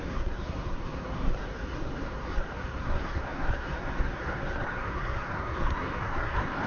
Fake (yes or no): yes